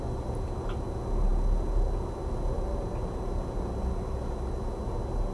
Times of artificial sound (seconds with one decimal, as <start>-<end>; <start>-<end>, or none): none

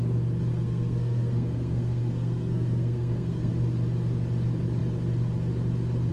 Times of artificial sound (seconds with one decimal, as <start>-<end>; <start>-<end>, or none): 0.5-3.5

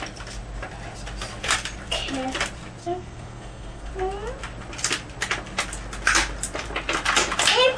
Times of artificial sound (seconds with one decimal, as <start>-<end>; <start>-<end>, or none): 2.8-3.9

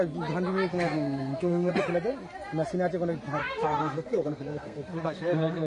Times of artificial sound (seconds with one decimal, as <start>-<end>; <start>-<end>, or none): 0.7-1.7; 3.4-5.7

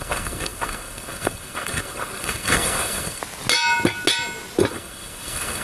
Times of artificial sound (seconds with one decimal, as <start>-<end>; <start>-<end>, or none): 0.0-3.2; 4.7-5.6

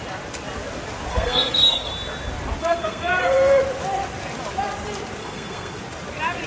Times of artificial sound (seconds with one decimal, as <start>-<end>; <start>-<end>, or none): 1.1-1.9; 2.6-3.6; 5.2-5.8

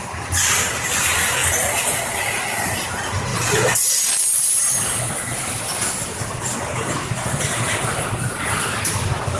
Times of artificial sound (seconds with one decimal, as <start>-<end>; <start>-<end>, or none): none